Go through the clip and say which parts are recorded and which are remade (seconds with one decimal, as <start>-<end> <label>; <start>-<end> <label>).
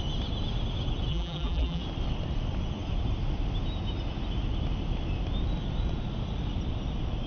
0.0-1.1 recorded; 1.1-1.8 remade; 1.8-7.3 recorded